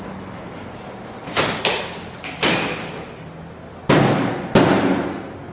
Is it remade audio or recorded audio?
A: recorded